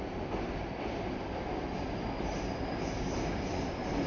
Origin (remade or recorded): recorded